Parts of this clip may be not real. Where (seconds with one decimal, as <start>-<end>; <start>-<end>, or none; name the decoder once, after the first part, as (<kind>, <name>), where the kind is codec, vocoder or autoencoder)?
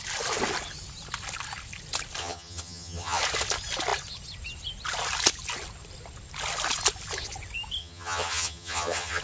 2.2-3.2 (vocoder, HiFi-GAN); 7.8-9.2